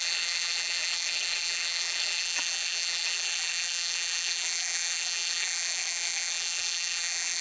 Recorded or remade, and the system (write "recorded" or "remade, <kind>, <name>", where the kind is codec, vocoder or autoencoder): remade, vocoder, BigVGAN v2